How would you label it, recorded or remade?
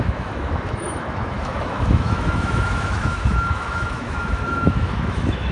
remade